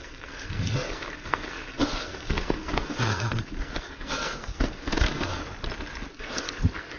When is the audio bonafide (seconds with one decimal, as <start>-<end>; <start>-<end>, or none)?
5.3-6.1